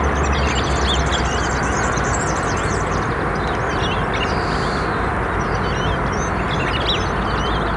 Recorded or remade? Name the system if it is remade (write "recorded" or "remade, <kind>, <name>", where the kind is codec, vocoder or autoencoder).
recorded